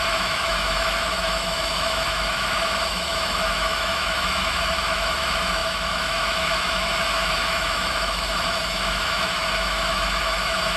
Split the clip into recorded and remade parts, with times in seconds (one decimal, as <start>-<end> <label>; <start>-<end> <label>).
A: 0.0-10.8 remade

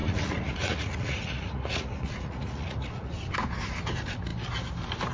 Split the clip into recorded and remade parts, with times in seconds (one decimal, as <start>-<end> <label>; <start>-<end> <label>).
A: 0.0-3.1 remade; 3.1-5.1 recorded

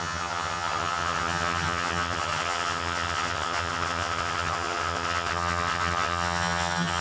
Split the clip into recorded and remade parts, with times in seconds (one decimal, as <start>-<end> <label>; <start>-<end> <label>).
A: 0.0-7.0 remade

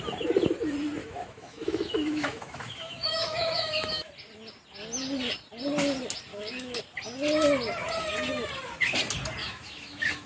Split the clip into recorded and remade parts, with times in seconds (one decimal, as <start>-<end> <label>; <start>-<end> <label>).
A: 0.0-1.0 recorded; 1.0-4.1 remade; 4.1-6.3 recorded; 6.3-6.8 remade; 6.8-9.4 recorded; 9.4-10.3 remade